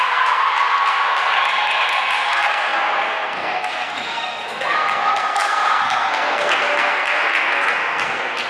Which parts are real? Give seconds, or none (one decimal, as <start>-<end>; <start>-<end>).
none